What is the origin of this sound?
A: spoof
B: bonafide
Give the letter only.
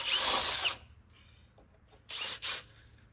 B